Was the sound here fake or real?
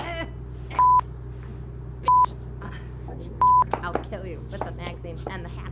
real